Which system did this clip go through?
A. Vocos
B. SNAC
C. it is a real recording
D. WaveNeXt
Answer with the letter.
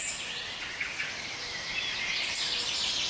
C